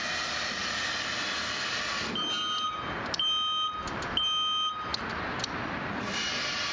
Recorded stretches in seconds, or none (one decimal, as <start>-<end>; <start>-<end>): 0.0-6.7

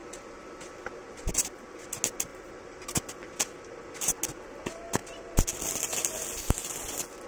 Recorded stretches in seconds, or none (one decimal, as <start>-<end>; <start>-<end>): 0.0-2.3; 3.0-7.3

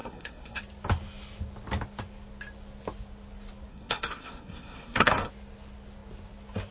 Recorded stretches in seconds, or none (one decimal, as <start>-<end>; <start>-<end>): 0.6-3.7; 5.3-6.7

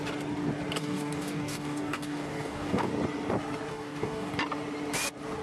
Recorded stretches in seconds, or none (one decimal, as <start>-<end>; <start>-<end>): 0.0-0.8; 2.9-3.7; 4.3-5.4

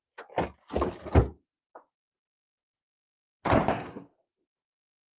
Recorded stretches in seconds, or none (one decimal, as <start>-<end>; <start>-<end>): 0.0-3.7; 4.3-5.2